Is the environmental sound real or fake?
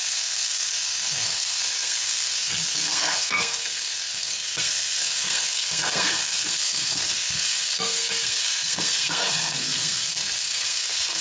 fake